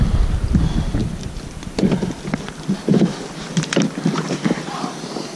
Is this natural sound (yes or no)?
yes